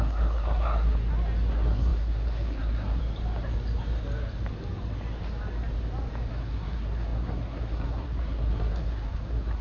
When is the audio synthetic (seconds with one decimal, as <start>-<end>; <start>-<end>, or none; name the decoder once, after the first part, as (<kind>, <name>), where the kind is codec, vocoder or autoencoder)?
0.0-1.0 (codec, SNAC); 1.5-3.0; 6.3-9.6